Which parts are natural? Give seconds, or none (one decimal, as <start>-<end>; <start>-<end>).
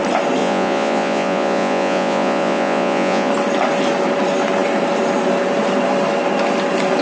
0.0-0.4; 3.3-7.0